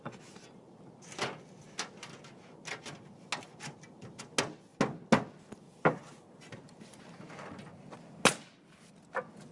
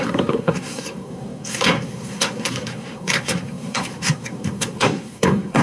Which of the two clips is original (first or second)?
first